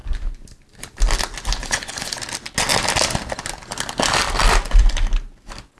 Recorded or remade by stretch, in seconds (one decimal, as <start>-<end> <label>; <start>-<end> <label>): 0.0-1.6 recorded; 1.6-2.2 remade; 2.2-5.8 recorded